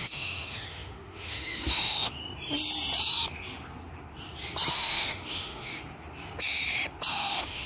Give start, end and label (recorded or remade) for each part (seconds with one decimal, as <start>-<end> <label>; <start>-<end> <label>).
0.0-2.2 remade; 2.2-4.7 recorded; 4.7-5.8 remade; 5.8-7.1 recorded; 7.1-7.7 remade